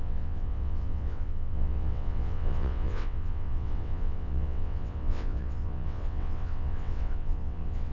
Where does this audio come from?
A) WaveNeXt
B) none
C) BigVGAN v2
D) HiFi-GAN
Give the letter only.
A